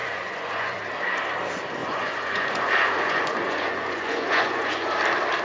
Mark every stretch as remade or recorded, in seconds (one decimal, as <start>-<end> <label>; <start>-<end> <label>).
0.0-0.8 remade; 0.8-1.8 recorded; 1.8-5.0 remade; 5.0-5.4 recorded